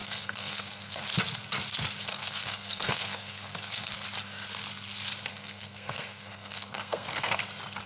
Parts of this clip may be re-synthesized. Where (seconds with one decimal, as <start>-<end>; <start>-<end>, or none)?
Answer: 0.0-1.0; 2.1-3.9; 5.3-7.4